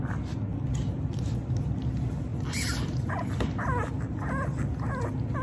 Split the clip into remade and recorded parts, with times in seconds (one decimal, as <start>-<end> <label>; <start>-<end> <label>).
0.0-2.3 recorded; 2.3-3.3 remade; 3.3-5.4 recorded